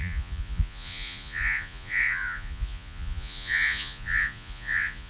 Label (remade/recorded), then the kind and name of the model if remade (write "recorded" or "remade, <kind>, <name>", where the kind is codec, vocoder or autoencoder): remade, vocoder, Vocos